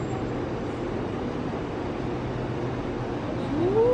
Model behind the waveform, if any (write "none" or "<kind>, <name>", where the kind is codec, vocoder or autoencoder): none